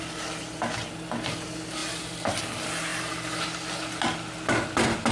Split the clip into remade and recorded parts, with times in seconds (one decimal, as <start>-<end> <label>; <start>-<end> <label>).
0.0-1.8 recorded; 1.8-2.4 remade; 2.4-2.9 recorded; 2.9-4.0 remade; 4.0-5.1 recorded

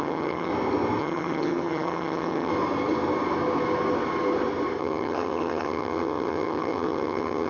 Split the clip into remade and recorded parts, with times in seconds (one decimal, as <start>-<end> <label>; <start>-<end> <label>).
0.0-0.5 remade; 0.5-1.0 recorded; 1.0-2.5 remade; 2.5-4.8 recorded; 4.8-7.5 remade

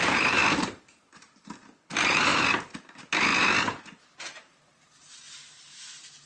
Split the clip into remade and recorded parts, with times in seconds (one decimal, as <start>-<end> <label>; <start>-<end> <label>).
0.0-0.4 remade; 0.4-1.9 recorded; 1.9-2.3 remade; 2.3-2.8 recorded; 2.8-3.3 remade; 3.3-3.8 recorded; 3.8-6.3 remade

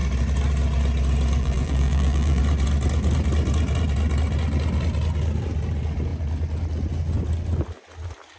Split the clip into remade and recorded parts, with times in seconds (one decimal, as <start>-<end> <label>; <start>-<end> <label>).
0.0-1.4 recorded; 1.4-2.4 remade; 2.4-8.4 recorded

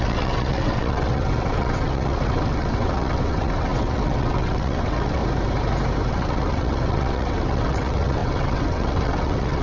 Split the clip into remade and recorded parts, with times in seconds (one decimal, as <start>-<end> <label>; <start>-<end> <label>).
0.0-5.2 remade; 5.2-6.1 recorded; 6.1-9.6 remade

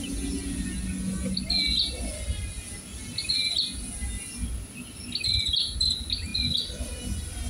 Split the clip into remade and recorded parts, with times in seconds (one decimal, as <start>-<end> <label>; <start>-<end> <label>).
0.0-7.5 recorded

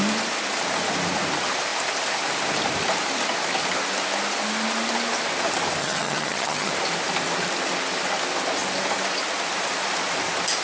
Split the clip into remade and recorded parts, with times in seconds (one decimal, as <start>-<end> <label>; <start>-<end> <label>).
0.0-5.8 recorded; 5.8-6.7 remade; 6.7-10.6 recorded